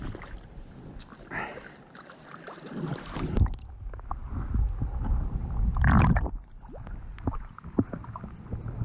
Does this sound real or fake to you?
real